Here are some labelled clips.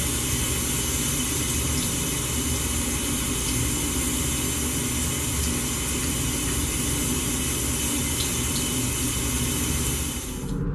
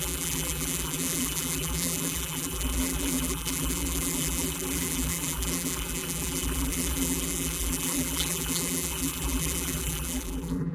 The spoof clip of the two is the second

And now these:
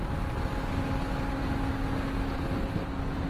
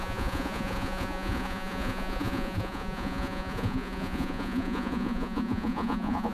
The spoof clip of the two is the second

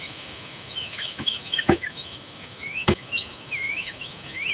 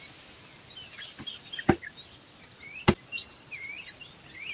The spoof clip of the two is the first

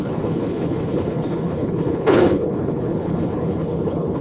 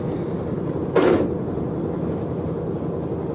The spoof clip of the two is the first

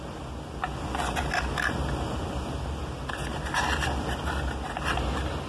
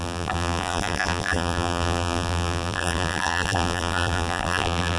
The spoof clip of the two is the second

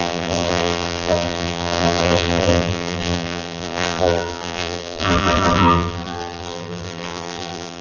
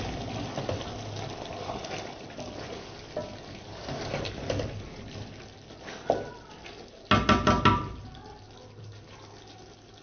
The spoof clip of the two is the first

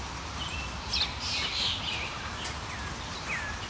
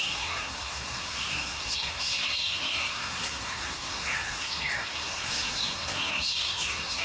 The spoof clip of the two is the second